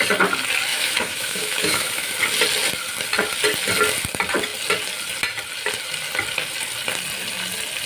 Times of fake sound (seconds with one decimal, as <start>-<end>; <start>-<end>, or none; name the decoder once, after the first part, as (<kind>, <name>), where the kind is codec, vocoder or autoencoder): 0.7-2.1 (autoencoder, DAC-VAE)